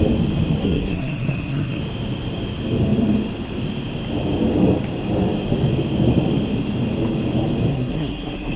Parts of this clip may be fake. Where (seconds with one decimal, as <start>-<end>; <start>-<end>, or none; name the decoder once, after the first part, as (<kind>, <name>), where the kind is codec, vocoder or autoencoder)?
0.6-1.8 (codec, SNAC); 7.7-8.6